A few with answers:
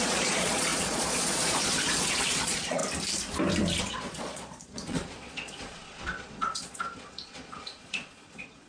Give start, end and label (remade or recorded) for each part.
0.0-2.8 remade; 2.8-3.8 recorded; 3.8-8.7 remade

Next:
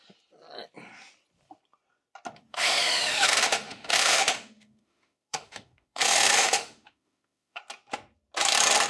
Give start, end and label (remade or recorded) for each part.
0.0-2.5 recorded; 2.5-7.6 remade; 7.6-8.9 recorded

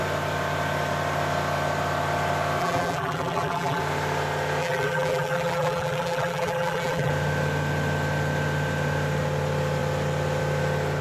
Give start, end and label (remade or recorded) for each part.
0.0-2.6 recorded; 2.6-3.8 remade; 3.8-4.6 recorded; 4.6-7.1 remade; 7.1-11.0 recorded

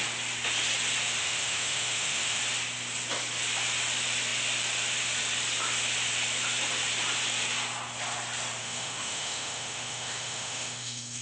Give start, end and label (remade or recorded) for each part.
0.0-1.2 recorded; 1.2-2.4 remade; 2.4-8.6 recorded; 8.6-11.2 remade

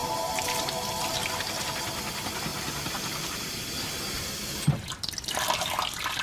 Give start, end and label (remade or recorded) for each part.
0.0-6.2 recorded

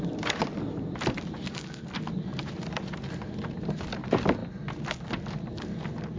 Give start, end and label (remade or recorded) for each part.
0.0-2.3 recorded; 2.3-3.9 remade; 3.9-6.2 recorded